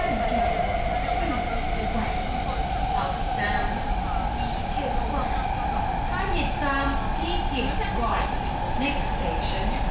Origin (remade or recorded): recorded